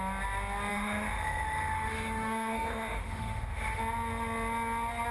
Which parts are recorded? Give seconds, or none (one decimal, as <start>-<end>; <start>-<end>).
0.0-0.7; 3.8-5.1